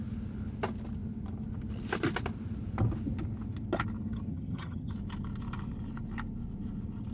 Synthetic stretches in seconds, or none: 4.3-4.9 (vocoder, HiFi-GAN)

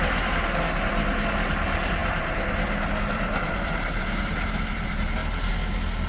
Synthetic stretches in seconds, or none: 0.0-5.2 (vocoder, BigVGAN v2)

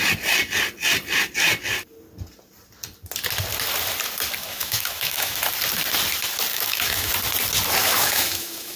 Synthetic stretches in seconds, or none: 4.4-5.4 (autoencoder, DAC-VAE); 6.5-7.1; 7.8-8.8